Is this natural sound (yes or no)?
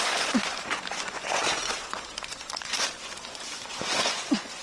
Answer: no